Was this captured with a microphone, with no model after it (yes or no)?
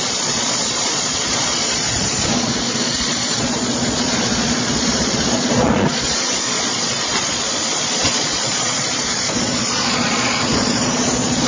no